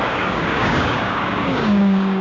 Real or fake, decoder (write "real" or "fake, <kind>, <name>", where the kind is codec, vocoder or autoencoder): fake, codec, DAC